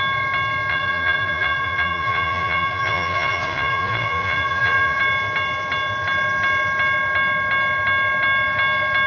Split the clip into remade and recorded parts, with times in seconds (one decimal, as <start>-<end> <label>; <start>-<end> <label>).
0.0-0.7 recorded; 0.7-5.0 remade; 5.0-9.1 recorded